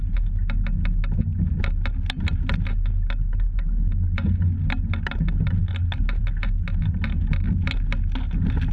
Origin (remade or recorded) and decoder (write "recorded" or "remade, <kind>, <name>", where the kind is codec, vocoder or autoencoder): recorded